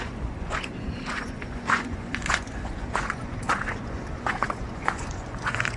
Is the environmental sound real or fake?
fake